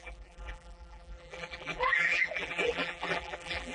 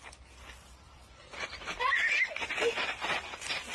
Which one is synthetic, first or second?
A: first